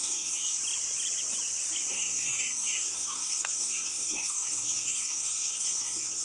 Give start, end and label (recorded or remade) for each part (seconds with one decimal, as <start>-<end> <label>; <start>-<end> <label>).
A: 0.0-0.6 remade; 0.6-1.9 recorded; 1.9-6.2 remade